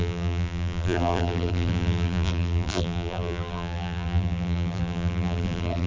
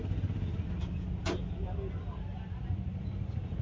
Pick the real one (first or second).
second